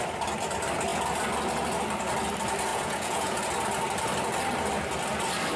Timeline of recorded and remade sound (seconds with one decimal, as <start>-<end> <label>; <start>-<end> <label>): 0.0-2.7 recorded; 2.7-3.4 remade; 3.4-5.6 recorded